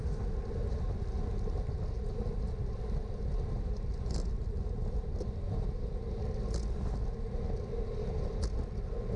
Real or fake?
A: real